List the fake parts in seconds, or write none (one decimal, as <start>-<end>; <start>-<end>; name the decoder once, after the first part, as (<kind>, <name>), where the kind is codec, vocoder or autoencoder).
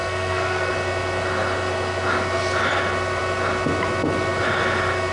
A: 0.0-0.7 (codec, SNAC)